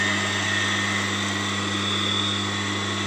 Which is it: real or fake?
real